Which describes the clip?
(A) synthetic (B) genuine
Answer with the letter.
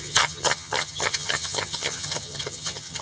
A